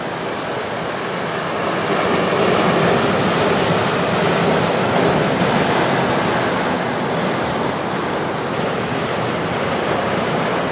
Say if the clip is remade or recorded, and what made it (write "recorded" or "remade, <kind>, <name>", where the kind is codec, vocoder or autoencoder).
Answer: recorded